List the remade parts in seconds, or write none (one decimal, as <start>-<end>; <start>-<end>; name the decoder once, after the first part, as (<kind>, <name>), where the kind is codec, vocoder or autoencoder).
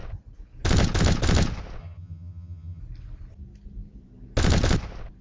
1.8-2.8 (vocoder, HiFi-GAN)